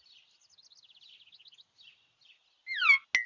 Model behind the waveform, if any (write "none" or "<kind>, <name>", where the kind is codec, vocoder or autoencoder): none